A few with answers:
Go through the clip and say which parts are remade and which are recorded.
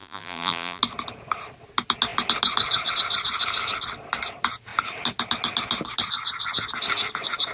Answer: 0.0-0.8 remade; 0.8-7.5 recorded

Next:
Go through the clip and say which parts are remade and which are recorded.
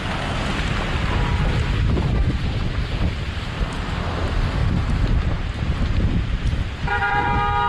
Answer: 0.0-1.3 recorded; 1.3-3.9 remade; 3.9-4.6 recorded; 4.6-7.1 remade; 7.1-7.7 recorded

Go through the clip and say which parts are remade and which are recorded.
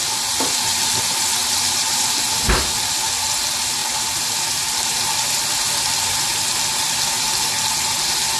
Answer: 0.0-3.8 recorded; 3.8-4.3 remade; 4.3-8.4 recorded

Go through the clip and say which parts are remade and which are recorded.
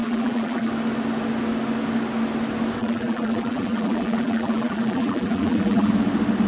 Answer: 0.0-0.7 remade; 0.7-2.8 recorded; 2.8-5.9 remade; 5.9-6.5 recorded